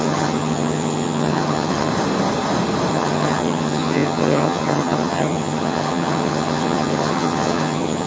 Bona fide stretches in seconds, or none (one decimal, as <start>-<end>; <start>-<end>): 1.9-2.9